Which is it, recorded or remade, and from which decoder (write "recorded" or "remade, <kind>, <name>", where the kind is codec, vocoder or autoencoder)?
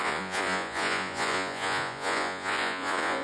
remade, vocoder, Vocos